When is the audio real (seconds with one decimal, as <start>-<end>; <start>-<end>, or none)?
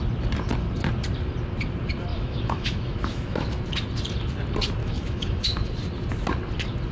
0.0-2.1; 3.6-4.8; 5.7-6.9